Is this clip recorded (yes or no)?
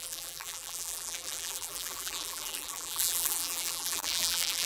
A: no